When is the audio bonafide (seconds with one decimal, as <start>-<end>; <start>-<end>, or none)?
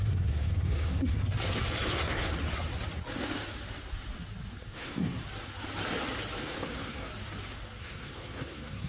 1.2-1.9; 2.3-4.6; 5.2-6.4; 7.1-7.8